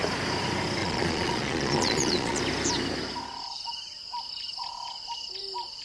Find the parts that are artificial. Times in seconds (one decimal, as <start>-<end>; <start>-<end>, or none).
0.8-2.4